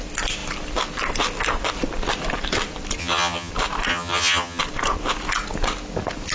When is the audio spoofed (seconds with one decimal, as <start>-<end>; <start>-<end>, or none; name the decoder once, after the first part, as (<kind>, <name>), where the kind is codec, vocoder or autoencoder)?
3.0-3.5 (vocoder, HiFi-GAN); 3.9-4.6